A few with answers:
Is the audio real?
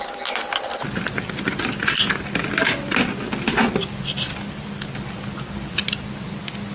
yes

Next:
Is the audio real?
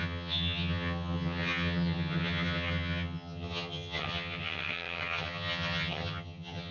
no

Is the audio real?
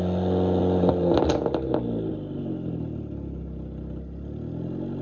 yes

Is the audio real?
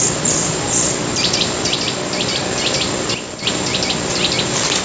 yes